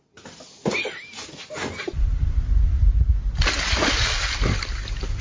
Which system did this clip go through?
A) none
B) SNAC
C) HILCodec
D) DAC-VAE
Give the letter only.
A